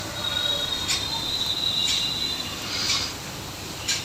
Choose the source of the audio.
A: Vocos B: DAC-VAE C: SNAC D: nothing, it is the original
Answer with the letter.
D